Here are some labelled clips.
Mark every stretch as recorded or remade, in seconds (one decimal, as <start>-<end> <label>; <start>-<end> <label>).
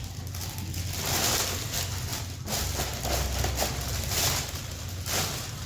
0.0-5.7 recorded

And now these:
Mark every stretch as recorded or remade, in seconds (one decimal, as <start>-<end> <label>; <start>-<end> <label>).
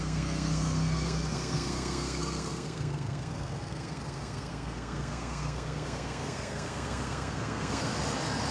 0.0-7.9 remade; 7.9-8.5 recorded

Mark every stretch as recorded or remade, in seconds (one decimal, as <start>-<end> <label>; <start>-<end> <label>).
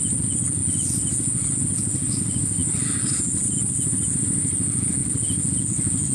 0.0-6.1 recorded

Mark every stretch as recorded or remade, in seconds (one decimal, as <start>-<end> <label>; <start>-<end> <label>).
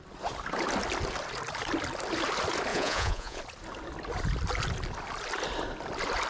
0.0-2.7 recorded; 2.7-3.4 remade; 3.4-6.3 recorded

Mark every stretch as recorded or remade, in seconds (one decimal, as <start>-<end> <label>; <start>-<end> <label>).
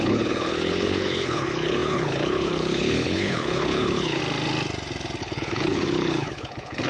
0.0-4.2 remade; 4.2-5.2 recorded; 5.2-6.9 remade